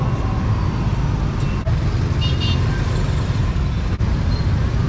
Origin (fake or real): real